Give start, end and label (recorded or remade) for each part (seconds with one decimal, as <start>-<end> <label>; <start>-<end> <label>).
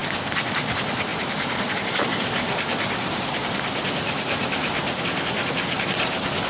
0.0-1.1 recorded; 1.1-1.7 remade; 1.7-2.1 recorded; 2.1-5.0 remade; 5.0-6.5 recorded